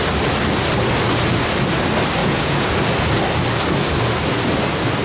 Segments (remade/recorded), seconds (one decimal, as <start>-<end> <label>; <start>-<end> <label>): 0.0-2.2 recorded; 2.2-2.7 remade; 2.7-5.0 recorded